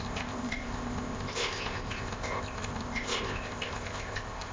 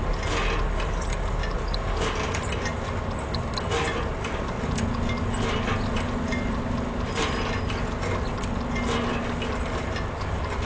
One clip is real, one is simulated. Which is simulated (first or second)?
first